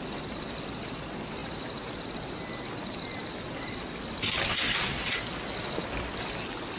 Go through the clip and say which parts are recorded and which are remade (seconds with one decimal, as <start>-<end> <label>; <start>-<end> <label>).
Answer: 0.0-6.8 recorded